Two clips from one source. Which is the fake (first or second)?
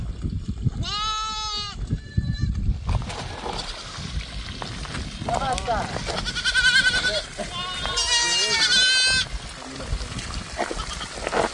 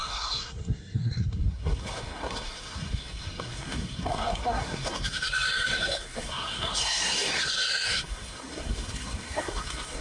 second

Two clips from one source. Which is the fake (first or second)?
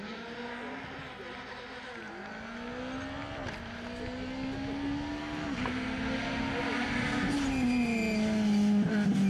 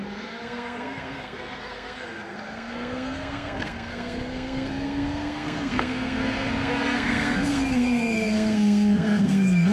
second